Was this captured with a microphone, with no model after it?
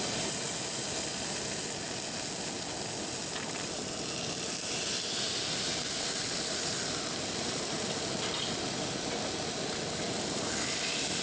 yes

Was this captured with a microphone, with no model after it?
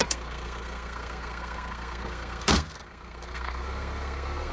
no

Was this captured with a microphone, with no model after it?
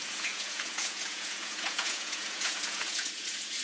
no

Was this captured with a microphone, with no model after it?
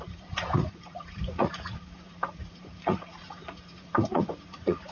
no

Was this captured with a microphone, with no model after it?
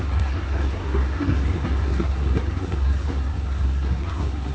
no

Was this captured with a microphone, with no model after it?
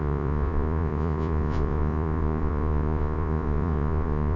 no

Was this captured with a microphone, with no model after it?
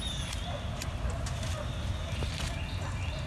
yes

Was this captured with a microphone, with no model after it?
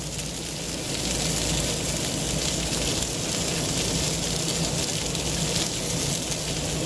yes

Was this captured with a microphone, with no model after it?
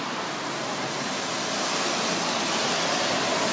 yes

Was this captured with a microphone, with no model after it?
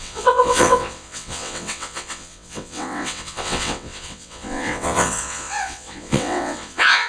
no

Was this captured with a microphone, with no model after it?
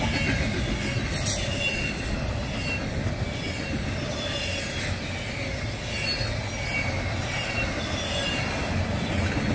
yes